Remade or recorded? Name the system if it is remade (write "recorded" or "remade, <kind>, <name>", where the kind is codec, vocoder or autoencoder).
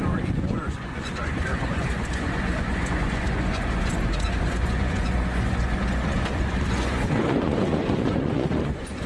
remade, vocoder, Vocos